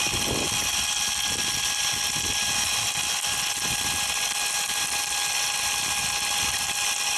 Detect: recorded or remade recorded